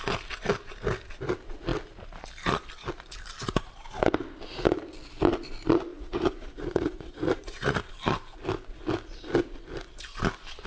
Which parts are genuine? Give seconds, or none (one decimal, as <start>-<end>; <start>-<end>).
0.0-5.9; 7.9-10.7